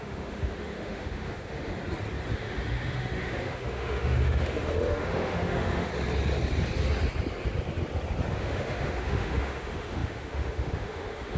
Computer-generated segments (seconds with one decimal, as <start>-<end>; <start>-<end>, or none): 0.0-1.7; 2.3-5.9; 8.3-11.4